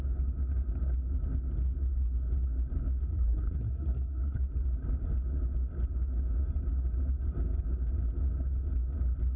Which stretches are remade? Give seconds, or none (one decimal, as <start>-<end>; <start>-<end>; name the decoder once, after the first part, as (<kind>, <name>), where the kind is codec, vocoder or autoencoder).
3.1-4.4 (codec, SNAC)

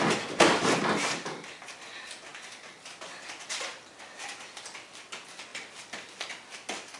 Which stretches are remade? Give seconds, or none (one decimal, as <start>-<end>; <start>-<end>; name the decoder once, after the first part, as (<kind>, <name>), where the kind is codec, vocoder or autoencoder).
none